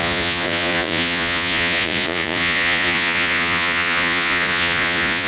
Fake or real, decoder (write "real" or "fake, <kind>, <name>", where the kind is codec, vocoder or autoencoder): fake, vocoder, Vocos